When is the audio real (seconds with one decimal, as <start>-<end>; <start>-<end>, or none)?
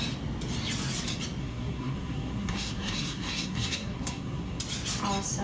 0.0-1.4; 4.6-5.4